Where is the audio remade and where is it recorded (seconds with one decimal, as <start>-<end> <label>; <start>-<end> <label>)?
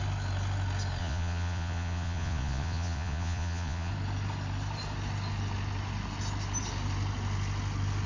0.0-1.0 recorded; 1.0-3.9 remade; 3.9-8.1 recorded